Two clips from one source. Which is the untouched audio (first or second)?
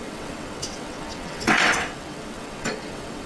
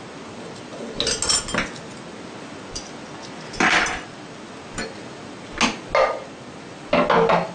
second